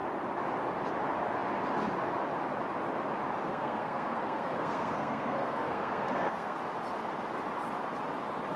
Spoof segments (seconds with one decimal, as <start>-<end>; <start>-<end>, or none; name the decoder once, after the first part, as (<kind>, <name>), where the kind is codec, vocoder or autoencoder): 3.5-6.6 (codec, SNAC)